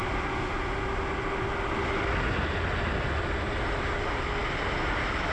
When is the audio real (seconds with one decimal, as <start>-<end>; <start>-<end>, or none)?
0.0-5.3